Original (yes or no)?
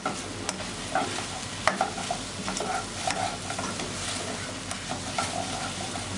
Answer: yes